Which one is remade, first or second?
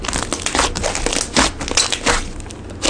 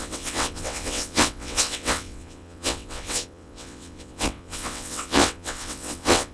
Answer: second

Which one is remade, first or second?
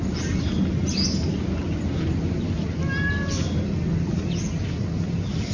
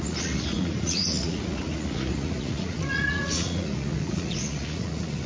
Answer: second